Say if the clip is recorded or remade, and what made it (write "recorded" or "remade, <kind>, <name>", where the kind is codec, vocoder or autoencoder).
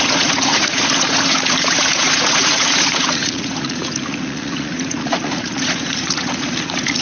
remade, vocoder, Vocos